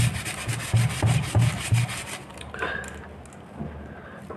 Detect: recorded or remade recorded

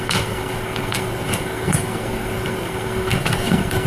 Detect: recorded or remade remade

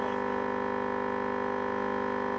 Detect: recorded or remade recorded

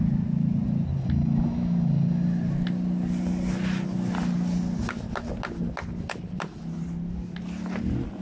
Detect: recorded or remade recorded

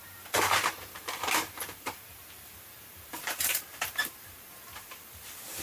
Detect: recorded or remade remade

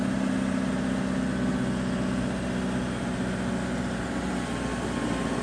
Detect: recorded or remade recorded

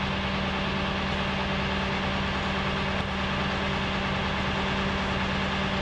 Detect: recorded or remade recorded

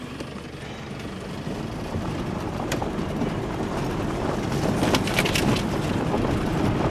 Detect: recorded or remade recorded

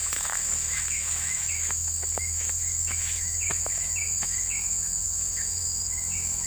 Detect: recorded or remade remade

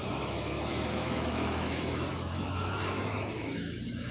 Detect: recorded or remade remade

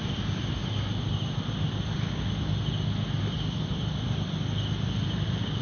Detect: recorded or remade recorded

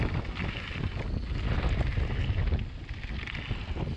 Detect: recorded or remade recorded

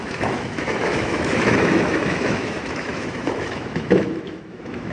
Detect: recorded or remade remade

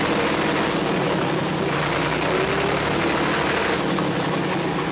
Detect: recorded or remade recorded